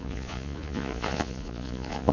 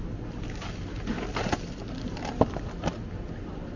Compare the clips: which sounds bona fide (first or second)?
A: second